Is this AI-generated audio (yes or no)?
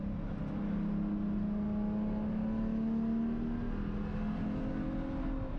no